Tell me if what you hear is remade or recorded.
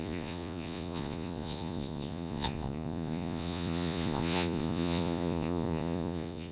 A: remade